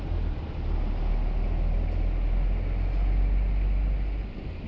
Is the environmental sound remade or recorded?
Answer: recorded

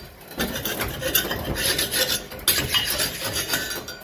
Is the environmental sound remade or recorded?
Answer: recorded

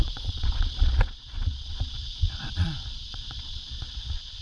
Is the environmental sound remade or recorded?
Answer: remade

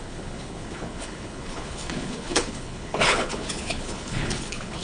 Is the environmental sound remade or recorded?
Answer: remade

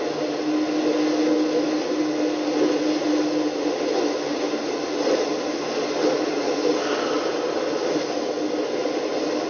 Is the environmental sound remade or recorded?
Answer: recorded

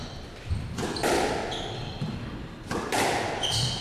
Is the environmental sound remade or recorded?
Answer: recorded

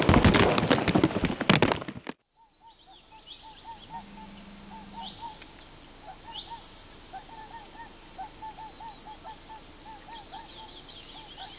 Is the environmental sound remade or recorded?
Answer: recorded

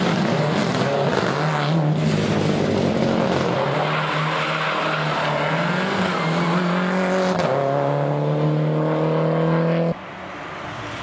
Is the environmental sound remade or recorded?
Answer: recorded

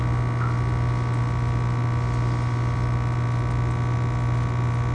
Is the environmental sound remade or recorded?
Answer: recorded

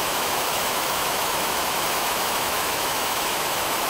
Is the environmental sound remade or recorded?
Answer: remade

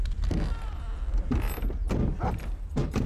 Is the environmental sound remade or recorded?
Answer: recorded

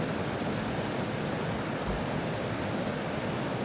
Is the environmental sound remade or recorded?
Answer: recorded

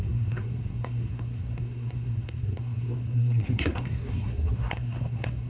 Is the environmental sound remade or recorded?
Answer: remade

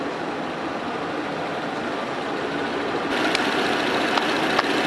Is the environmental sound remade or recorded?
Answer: recorded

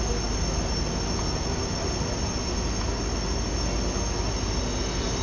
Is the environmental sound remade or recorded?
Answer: recorded